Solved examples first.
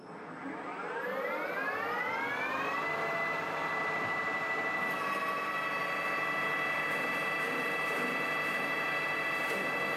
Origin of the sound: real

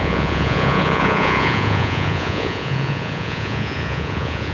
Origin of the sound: fake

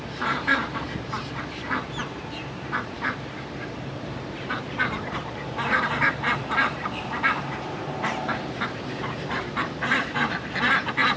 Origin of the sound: fake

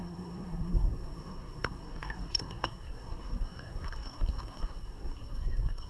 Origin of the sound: fake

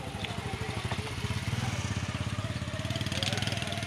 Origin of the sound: real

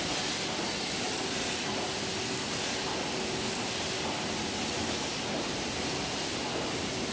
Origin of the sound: real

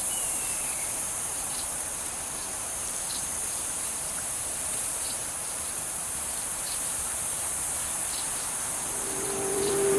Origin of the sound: fake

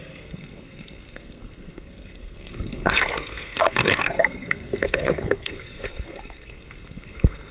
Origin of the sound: fake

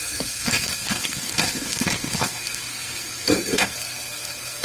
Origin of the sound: fake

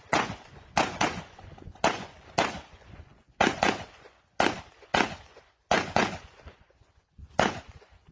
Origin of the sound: fake